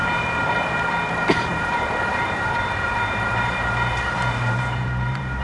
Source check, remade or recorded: remade